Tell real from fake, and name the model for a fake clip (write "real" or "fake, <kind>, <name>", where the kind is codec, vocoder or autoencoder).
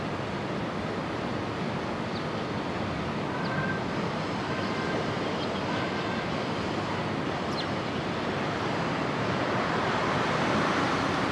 real